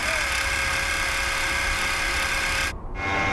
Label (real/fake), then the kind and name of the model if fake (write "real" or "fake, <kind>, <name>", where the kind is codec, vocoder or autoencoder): real